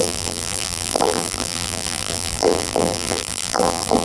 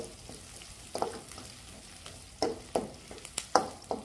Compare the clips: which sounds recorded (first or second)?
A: second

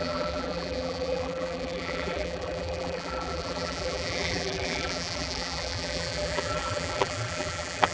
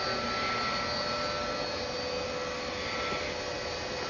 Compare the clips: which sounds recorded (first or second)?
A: second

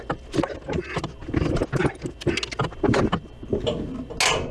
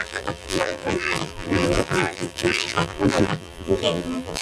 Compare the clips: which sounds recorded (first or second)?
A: first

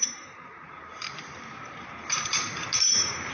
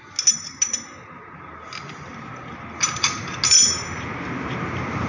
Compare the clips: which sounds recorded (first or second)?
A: second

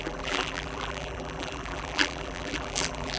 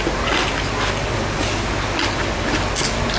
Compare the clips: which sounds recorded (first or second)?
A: second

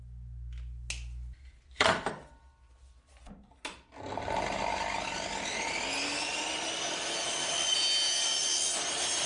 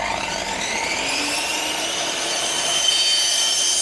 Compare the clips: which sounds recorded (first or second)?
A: first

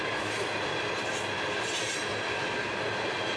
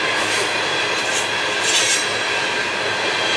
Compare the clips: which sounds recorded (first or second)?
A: second